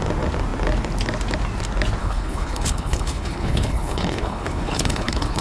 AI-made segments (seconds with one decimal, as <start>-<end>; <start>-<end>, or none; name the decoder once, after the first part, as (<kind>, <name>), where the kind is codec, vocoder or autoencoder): 2.0-5.4 (codec, HILCodec)